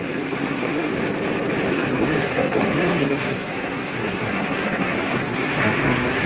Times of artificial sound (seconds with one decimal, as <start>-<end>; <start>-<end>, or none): 0.0-0.9; 1.7-6.3